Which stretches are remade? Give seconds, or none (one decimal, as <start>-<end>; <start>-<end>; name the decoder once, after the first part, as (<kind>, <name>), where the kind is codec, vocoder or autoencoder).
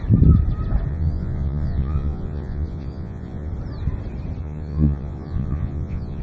0.9-3.5 (vocoder, Vocos); 4.4-6.2